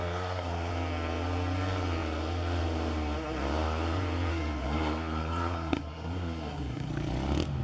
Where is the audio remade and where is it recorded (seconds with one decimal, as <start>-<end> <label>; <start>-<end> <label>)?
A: 0.0-0.7 remade; 0.7-4.3 recorded; 4.3-6.9 remade; 6.9-7.6 recorded